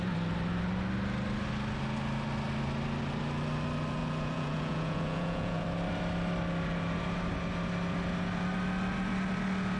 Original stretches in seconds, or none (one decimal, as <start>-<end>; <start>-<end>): 0.0-4.0; 5.6-9.8